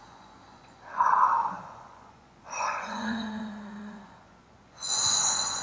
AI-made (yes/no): yes